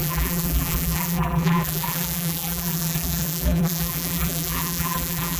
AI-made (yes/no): yes